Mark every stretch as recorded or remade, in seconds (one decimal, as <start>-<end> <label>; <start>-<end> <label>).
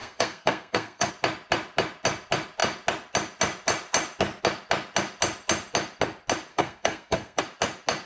0.0-1.1 remade; 1.1-6.5 recorded; 6.5-7.4 remade; 7.4-8.1 recorded